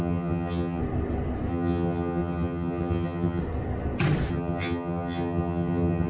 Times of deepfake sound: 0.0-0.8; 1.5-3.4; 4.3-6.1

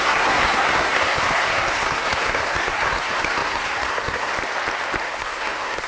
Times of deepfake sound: 0.0-4.3; 5.0-5.9

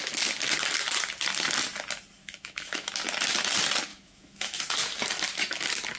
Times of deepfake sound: 2.2-2.9; 3.9-4.6

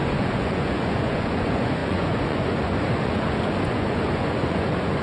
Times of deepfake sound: 0.0-5.0

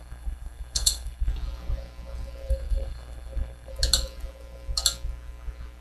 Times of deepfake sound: 0.0-1.3; 2.5-3.7